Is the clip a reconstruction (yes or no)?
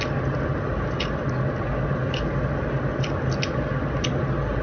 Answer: no